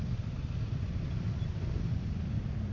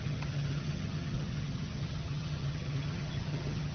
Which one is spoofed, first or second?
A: second